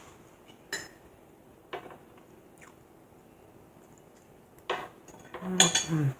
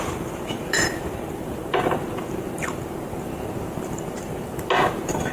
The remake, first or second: second